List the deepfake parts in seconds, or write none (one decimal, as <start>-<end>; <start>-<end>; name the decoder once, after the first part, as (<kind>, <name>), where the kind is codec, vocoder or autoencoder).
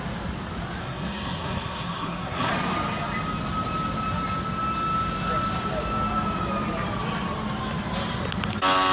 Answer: 0.8-2.5 (codec, SNAC)